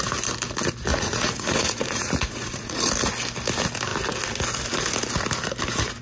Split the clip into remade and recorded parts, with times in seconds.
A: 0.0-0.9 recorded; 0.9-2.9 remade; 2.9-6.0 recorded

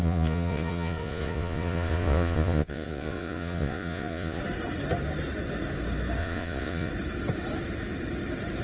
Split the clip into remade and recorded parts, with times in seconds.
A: 0.0-4.4 remade; 4.4-6.2 recorded; 6.2-6.9 remade; 6.9-8.6 recorded

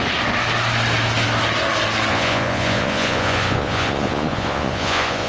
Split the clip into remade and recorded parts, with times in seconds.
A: 0.0-2.1 recorded; 2.1-5.3 remade

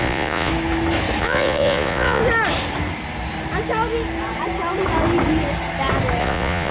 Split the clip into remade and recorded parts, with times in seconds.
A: 0.0-0.5 remade; 0.5-1.2 recorded; 1.2-2.2 remade; 2.2-6.2 recorded; 6.2-6.7 remade

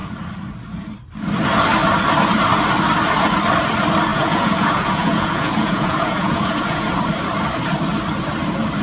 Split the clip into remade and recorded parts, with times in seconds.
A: 0.0-4.1 recorded; 4.1-6.9 remade; 6.9-8.8 recorded